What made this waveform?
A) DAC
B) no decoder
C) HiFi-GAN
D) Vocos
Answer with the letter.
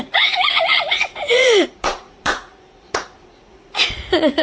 D